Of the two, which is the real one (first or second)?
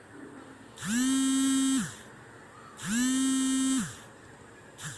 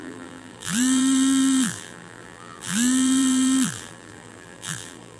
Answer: first